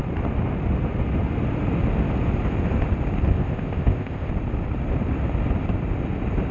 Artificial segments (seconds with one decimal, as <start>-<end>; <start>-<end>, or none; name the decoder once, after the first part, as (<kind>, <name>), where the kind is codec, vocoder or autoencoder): 3.3-4.3 (codec, ZipCodec)